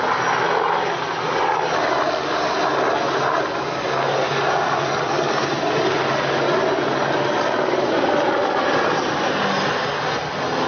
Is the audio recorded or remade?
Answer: recorded